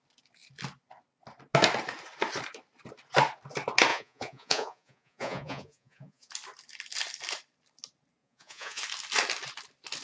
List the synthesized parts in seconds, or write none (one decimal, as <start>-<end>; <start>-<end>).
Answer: 3.9-6.3; 8.2-8.8